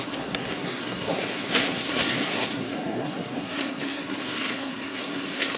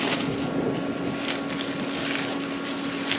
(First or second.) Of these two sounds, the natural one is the second